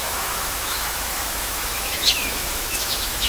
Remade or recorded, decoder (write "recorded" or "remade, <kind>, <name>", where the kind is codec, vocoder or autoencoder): remade, autoencoder, DAC-VAE